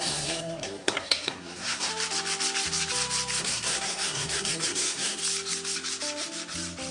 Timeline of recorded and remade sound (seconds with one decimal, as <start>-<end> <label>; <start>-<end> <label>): 0.0-1.9 remade; 1.9-3.4 recorded; 3.4-5.2 remade; 5.2-6.9 recorded